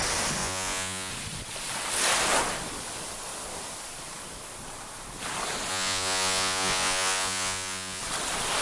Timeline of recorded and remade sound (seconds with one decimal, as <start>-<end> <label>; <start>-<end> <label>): 0.0-0.4 recorded; 0.4-1.1 remade; 1.1-5.7 recorded; 5.7-8.0 remade; 8.0-8.6 recorded